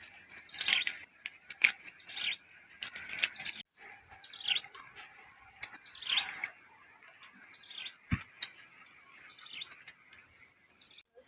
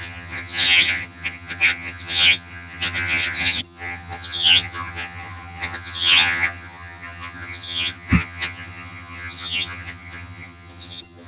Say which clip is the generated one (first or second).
second